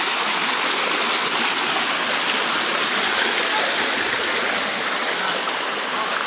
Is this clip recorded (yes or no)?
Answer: yes